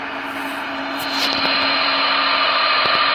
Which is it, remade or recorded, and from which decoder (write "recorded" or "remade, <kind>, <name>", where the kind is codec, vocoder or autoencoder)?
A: recorded